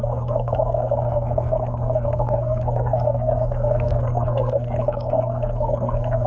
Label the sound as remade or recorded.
remade